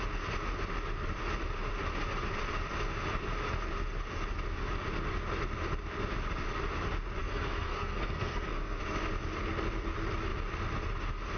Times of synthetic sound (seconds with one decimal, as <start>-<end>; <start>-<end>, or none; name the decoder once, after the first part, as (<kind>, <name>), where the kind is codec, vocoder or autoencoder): 7.2-8.8 (codec, SNAC)